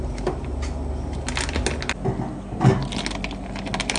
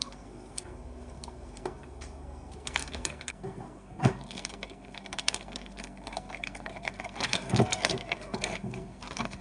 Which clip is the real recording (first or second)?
first